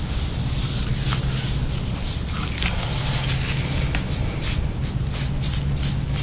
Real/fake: real